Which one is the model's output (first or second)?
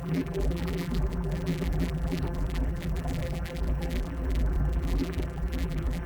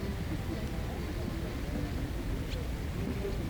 first